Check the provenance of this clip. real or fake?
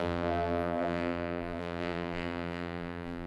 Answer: fake